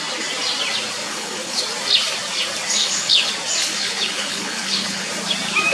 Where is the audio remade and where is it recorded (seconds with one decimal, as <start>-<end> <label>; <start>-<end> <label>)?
0.0-1.0 recorded; 1.0-1.6 remade; 1.6-2.8 recorded; 2.8-3.3 remade; 3.3-3.7 recorded; 3.7-5.1 remade; 5.1-5.7 recorded